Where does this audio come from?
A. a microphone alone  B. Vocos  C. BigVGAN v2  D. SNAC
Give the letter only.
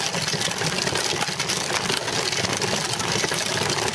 A